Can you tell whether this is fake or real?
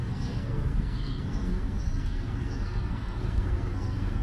fake